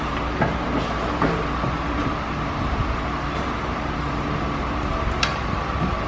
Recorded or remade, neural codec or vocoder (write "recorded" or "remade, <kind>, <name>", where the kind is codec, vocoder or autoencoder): remade, vocoder, BigVGAN v2